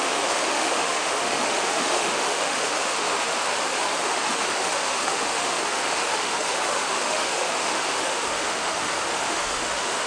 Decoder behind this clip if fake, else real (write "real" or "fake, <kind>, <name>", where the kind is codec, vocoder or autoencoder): fake, autoencoder, DAC-VAE